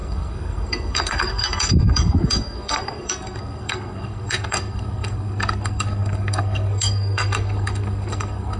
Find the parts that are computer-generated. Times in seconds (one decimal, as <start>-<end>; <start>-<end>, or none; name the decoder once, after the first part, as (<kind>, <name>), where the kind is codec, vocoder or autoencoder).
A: 0.0-8.6 (codec, SNAC)